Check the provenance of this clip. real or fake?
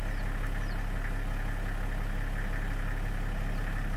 real